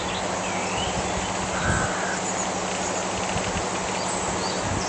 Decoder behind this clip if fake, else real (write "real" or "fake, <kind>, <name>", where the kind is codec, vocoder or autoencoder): real